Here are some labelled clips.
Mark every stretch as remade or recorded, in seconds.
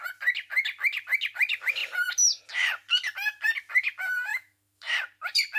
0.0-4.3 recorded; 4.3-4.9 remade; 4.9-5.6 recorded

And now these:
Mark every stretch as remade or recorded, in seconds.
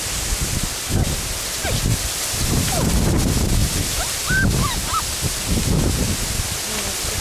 0.0-7.2 recorded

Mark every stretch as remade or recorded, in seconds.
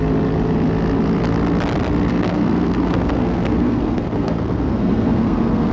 0.0-2.1 recorded; 2.1-5.7 remade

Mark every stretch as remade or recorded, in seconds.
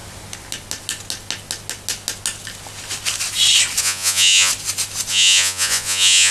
0.0-3.8 recorded; 3.8-4.5 remade; 4.5-5.1 recorded; 5.1-6.3 remade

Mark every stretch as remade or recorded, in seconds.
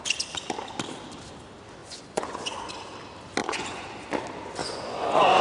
0.0-1.8 recorded; 1.8-2.7 remade; 2.7-3.4 recorded; 3.4-4.0 remade; 4.0-4.6 recorded; 4.6-5.4 remade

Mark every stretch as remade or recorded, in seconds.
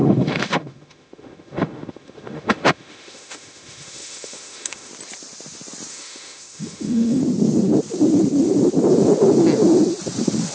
0.0-4.9 remade; 4.9-5.9 recorded; 5.9-7.2 remade; 7.2-10.5 recorded